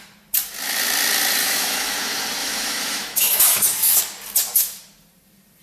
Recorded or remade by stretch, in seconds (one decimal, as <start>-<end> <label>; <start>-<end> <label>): 0.0-1.4 recorded; 1.4-2.0 remade; 2.0-2.4 recorded; 2.4-4.0 remade; 4.0-5.6 recorded